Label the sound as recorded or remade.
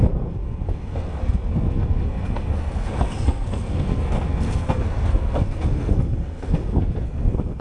remade